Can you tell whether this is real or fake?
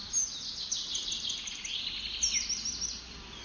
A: real